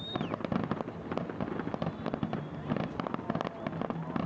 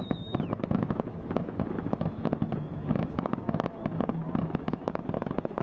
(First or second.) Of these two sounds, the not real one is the second